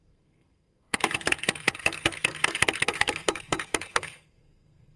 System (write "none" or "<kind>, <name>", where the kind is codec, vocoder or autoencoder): codec, SNAC